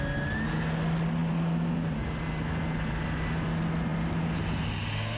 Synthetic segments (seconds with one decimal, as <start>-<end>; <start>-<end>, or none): none